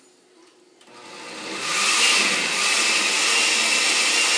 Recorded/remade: recorded